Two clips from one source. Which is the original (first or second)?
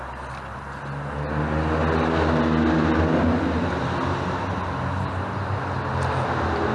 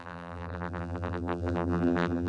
first